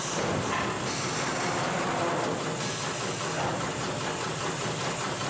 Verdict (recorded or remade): recorded